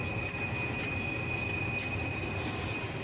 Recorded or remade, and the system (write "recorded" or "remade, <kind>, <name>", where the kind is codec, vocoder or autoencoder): recorded